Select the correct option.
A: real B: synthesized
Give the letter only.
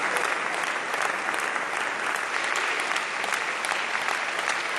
A